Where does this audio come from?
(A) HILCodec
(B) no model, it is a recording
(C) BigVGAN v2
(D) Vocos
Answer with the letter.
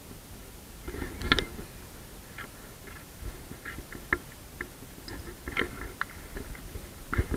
B